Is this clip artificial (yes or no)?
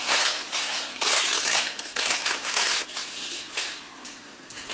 yes